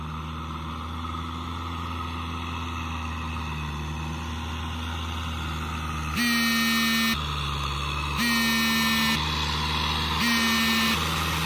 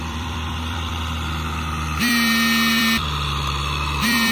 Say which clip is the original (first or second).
first